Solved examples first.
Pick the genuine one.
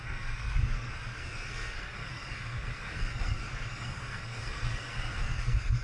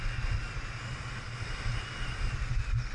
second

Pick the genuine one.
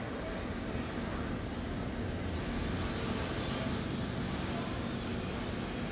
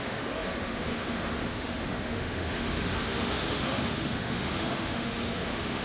first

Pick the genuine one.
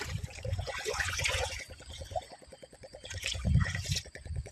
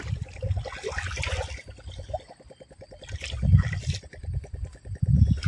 second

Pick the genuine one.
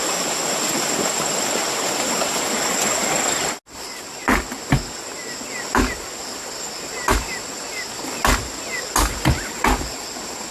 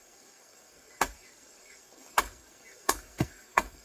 first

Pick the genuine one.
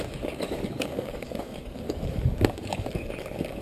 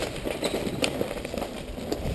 second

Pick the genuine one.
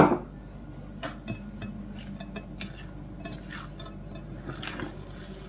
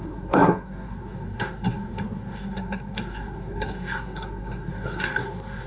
first